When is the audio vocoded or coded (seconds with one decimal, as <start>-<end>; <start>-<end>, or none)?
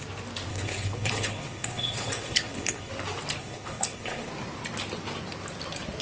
0.5-2.9; 3.4-4.3